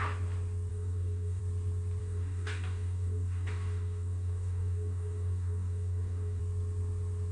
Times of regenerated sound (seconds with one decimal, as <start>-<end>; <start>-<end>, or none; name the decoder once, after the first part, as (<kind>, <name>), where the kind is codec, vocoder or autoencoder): 0.7-1.4 (codec, DAC); 2.0-6.4